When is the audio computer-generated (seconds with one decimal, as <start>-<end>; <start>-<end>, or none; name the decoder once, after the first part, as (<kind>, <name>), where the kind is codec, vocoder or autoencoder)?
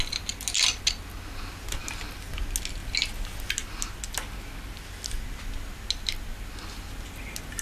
none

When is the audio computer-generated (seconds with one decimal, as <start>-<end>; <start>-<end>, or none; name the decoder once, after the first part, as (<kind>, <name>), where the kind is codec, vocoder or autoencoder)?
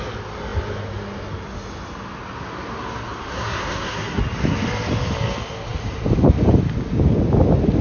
3.3-4.2 (codec, SNAC)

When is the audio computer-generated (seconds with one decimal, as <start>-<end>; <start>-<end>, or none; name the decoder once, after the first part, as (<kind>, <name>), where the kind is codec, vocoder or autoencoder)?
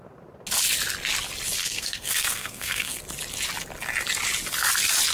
1.6-3.0 (codec, SNAC)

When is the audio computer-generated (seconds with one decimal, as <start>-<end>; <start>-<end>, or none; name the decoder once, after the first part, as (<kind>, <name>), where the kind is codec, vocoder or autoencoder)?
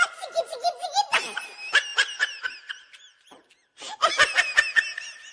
none